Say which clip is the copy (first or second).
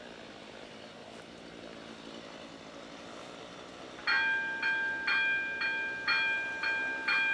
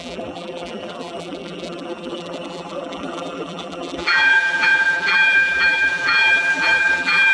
second